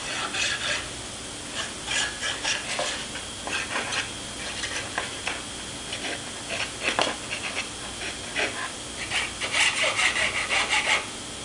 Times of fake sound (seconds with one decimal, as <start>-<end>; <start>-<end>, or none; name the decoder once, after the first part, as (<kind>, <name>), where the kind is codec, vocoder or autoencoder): none